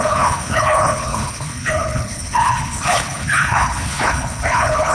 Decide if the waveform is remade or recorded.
remade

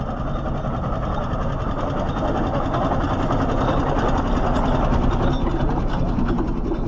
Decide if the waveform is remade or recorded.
recorded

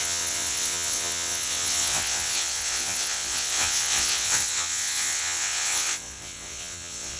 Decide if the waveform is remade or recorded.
remade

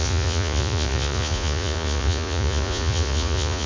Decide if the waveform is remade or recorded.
remade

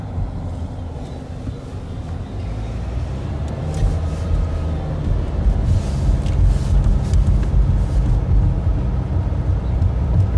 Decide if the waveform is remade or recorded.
recorded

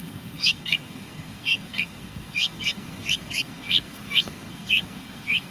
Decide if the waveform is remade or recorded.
remade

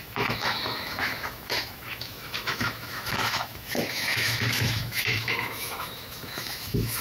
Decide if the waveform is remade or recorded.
remade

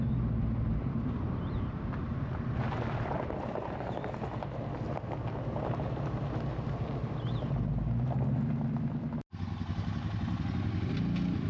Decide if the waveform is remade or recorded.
recorded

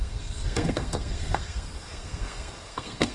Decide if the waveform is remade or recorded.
remade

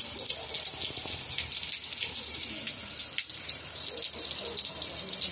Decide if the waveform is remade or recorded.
recorded